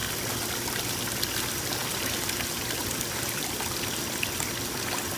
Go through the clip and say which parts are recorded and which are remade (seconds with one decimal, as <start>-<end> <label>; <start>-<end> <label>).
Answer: 0.0-5.2 recorded